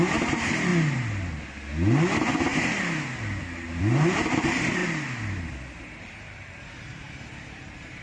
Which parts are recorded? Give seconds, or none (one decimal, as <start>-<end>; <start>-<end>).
0.7-3.8; 4.8-5.8